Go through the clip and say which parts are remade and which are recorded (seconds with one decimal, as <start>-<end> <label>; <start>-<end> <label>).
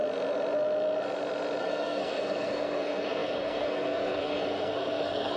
0.0-1.6 recorded; 1.6-5.4 remade